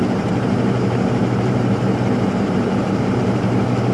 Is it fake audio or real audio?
fake